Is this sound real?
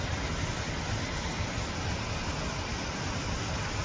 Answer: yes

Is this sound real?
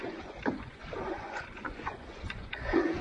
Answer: no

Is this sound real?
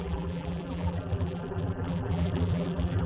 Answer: no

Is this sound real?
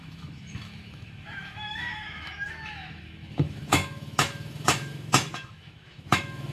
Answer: no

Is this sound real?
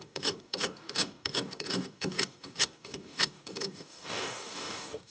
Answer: no